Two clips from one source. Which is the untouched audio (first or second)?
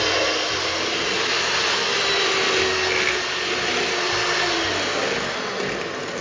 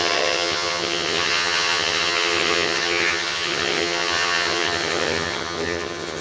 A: first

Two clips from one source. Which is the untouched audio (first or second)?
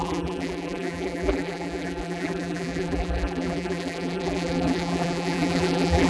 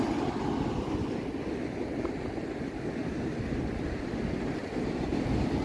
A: second